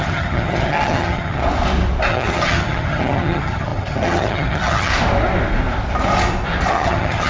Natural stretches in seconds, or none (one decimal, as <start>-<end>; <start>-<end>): 1.4-2.1; 4.9-6.7